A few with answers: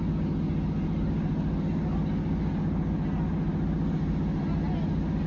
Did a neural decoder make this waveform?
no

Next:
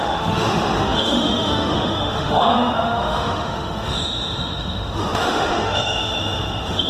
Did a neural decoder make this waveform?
yes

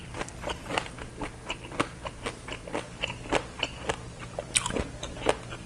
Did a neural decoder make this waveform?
no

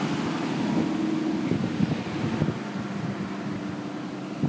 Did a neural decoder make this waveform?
no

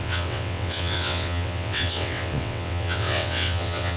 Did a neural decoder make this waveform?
yes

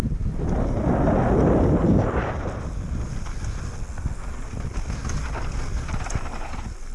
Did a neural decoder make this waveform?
no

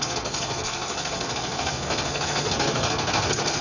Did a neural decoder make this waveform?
yes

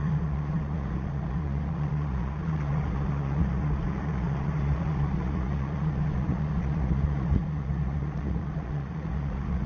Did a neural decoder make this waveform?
yes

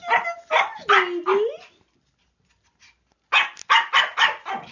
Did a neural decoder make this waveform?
no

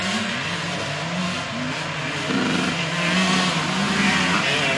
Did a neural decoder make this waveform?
no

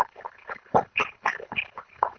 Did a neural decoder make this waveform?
yes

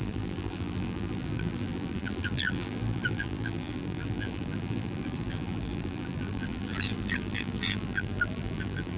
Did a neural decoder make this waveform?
yes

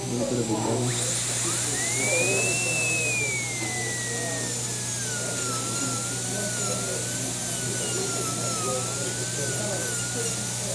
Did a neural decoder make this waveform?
no